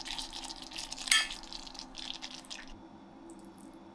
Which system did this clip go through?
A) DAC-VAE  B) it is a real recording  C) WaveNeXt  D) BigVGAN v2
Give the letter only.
B